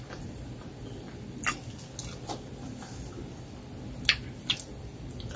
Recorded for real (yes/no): yes